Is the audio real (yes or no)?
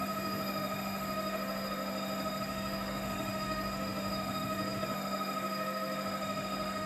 no